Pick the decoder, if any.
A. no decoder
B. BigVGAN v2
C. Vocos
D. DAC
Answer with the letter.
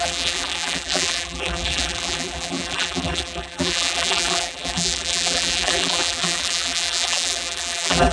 B